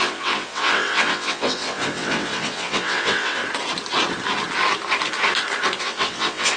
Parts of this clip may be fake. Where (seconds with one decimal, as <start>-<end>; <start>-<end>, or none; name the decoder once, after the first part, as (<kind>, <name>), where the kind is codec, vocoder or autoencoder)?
0.0-3.4 (vocoder, WaveNeXt); 5.8-6.6